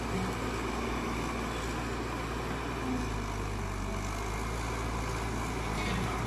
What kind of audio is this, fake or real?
real